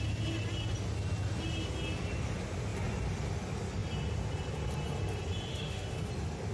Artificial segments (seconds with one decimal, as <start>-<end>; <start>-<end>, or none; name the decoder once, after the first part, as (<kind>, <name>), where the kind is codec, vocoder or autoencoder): 5.5-6.1 (autoencoder, DAC-VAE)

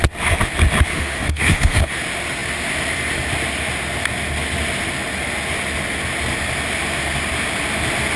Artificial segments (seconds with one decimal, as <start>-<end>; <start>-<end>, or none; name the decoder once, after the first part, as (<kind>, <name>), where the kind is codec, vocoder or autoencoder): 0.9-2.0 (autoencoder, DAC-VAE)

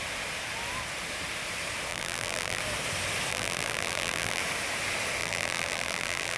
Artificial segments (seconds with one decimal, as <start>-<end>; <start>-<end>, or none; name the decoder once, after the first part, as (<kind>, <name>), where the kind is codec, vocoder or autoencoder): 1.9-2.6 (vocoder, BigVGAN v2); 3.3-4.4; 5.2-6.4

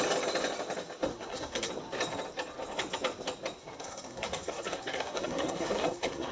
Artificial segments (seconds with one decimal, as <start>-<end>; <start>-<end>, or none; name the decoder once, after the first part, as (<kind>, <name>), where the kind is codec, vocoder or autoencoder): 1.1-1.7 (codec, SNAC); 3.6-6.3

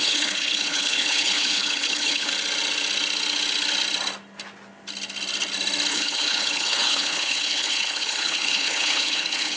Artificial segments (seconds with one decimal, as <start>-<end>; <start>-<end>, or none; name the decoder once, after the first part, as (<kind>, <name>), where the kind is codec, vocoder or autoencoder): 0.0-2.3 (codec, HILCodec); 5.9-9.6

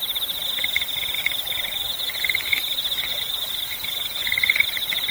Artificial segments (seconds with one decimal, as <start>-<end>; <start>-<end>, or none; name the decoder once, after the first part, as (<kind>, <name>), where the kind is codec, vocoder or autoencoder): none

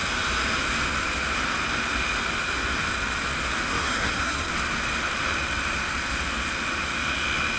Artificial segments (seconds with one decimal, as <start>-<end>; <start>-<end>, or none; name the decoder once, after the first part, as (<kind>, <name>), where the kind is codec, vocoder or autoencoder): 3.7-4.5 (codec, SNAC)